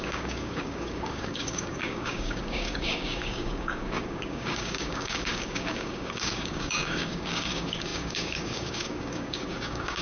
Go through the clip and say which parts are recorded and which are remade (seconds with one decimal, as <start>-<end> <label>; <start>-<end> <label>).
0.0-10.0 remade